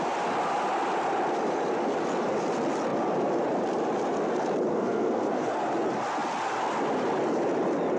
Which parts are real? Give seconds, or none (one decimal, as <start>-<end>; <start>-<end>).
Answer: 0.0-4.7; 5.5-8.0

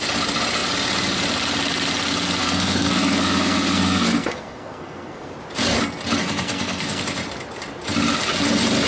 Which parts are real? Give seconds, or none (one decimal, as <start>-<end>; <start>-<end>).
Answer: 0.0-2.4; 5.3-6.2; 7.0-8.9

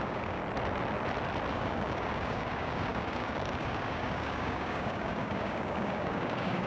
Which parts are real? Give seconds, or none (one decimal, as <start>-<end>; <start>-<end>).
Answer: 0.4-1.5

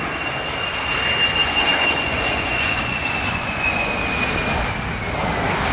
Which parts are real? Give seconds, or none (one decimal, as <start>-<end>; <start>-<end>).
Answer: 0.0-1.4; 3.9-5.7

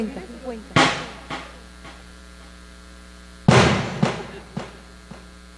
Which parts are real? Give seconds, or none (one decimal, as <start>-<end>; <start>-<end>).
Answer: 0.0-5.6

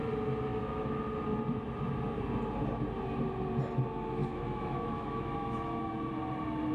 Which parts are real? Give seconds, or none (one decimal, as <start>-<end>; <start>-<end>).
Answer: 0.0-0.5; 1.0-4.2; 6.1-6.7

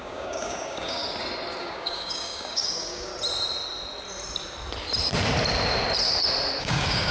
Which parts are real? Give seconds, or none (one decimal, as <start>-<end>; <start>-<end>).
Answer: 1.0-1.6; 3.1-6.6